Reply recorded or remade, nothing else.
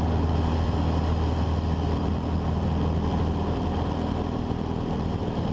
remade